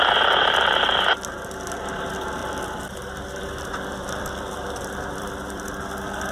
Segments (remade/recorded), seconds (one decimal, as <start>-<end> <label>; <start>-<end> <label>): 0.0-0.4 recorded; 0.4-1.8 remade; 1.8-2.4 recorded; 2.4-5.6 remade; 5.6-6.3 recorded